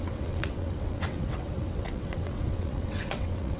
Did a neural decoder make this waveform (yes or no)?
yes